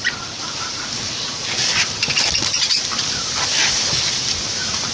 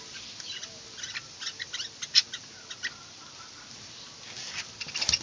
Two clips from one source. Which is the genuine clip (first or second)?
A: second